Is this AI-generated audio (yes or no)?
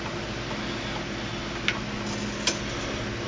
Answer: no